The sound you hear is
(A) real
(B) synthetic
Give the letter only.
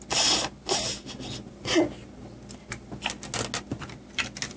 A